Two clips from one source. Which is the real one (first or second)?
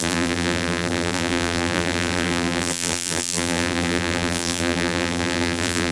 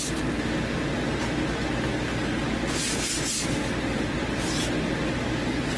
second